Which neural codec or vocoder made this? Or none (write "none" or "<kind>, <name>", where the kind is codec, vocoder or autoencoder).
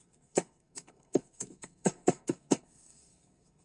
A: codec, SNAC